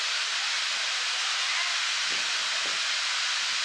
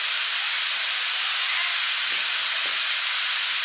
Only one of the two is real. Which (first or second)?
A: first